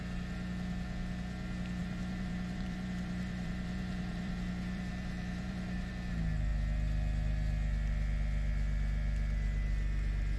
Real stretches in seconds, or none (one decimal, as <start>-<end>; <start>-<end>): 0.0-1.8; 5.9-10.4